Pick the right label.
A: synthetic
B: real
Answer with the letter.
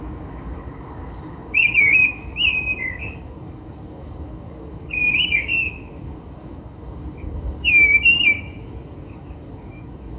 A